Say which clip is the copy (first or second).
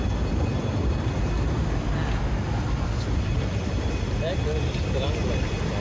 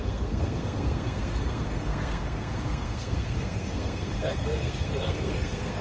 second